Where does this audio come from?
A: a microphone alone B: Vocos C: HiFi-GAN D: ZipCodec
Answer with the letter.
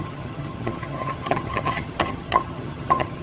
C